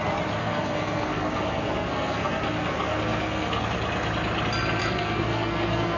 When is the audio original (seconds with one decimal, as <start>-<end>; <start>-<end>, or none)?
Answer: 0.0-0.4; 3.6-4.8